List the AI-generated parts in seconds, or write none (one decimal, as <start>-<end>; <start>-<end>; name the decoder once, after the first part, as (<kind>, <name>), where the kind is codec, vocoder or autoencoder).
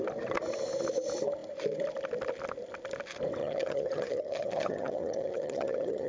3.4-6.1 (vocoder, HiFi-GAN)